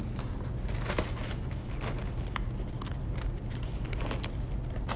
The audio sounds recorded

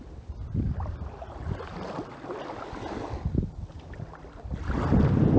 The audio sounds recorded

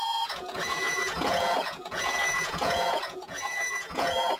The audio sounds remade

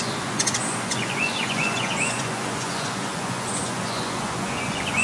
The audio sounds remade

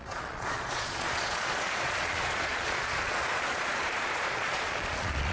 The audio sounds remade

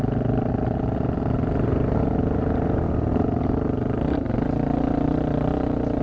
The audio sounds recorded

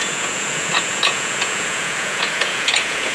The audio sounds remade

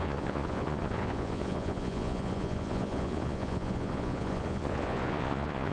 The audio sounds remade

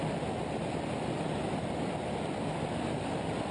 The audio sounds recorded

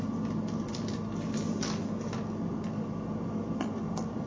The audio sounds recorded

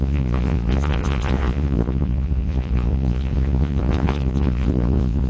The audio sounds remade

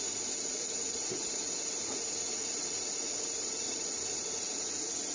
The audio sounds remade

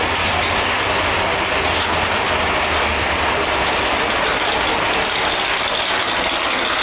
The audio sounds recorded